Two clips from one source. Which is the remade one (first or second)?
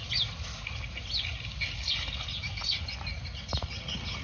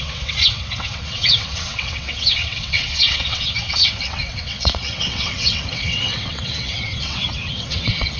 second